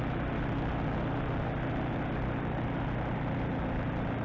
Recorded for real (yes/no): yes